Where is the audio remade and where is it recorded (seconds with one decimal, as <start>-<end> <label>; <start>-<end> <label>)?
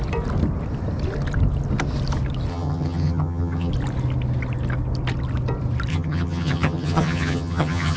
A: 0.0-2.5 recorded; 2.5-3.7 remade; 3.7-5.9 recorded; 5.9-8.0 remade